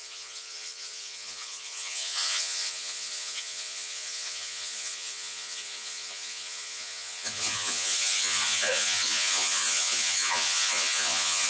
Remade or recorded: remade